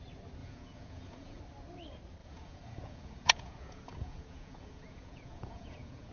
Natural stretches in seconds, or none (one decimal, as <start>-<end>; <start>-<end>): 0.0-0.4; 1.4-2.2